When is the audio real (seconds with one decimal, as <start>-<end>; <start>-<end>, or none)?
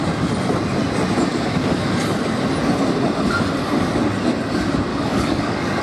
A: 0.0-1.3; 1.9-4.9